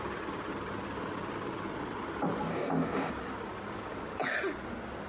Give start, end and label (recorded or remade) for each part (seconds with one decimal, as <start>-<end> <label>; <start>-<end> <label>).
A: 0.0-2.5 recorded; 2.5-3.1 remade; 3.1-5.1 recorded